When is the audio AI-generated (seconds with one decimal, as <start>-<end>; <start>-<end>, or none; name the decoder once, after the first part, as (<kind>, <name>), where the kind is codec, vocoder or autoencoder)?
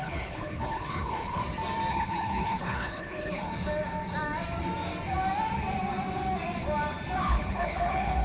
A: 0.0-1.4 (codec, HILCodec); 1.9-3.5; 7.2-8.2